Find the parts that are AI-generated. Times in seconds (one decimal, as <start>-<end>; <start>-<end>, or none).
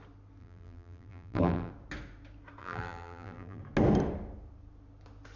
0.4-1.7; 2.6-3.6